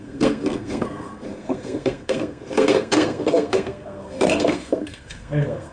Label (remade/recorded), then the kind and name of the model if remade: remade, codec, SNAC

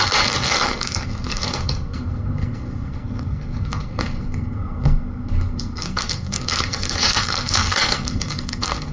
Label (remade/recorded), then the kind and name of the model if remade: remade, codec, SNAC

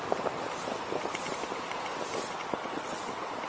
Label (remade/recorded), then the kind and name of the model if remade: recorded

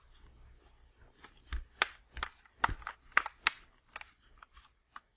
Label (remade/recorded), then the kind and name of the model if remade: recorded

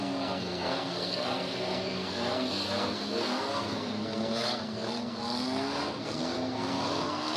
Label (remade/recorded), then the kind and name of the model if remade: remade, codec, SNAC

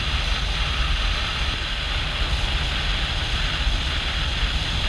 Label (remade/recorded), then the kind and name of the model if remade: recorded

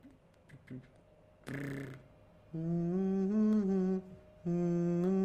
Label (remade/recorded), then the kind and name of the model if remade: recorded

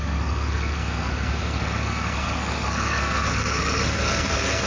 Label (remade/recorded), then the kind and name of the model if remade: remade, codec, SNAC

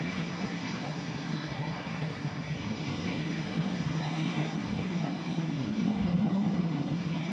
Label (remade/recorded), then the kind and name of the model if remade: remade, codec, SNAC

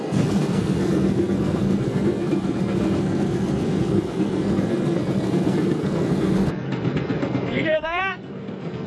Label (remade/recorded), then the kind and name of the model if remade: remade, codec, SNAC